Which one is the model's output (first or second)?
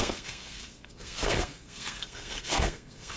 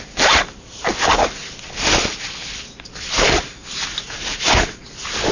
first